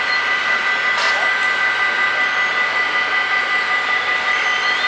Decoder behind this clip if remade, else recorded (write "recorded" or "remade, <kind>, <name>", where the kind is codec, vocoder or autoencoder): recorded